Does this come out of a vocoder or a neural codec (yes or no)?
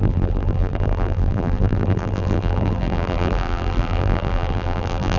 yes